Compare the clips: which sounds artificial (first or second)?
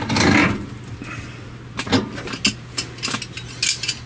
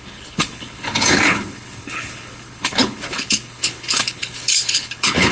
second